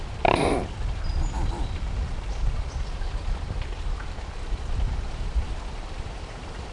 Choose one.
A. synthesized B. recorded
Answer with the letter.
A